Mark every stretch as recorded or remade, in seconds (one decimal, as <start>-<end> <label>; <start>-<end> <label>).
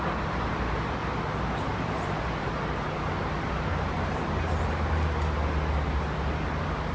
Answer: 0.0-1.7 recorded; 1.7-4.2 remade; 4.2-6.9 recorded